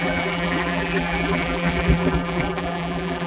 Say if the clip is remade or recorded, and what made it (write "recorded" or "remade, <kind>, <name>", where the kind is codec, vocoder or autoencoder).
remade, vocoder, BigVGAN v2